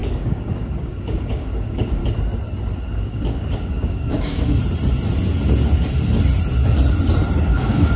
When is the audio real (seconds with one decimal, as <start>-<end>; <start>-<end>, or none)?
2.0-2.9; 4.6-7.4